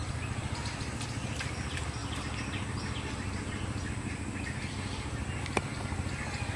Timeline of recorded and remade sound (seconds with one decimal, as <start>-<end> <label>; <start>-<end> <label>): 0.0-6.6 recorded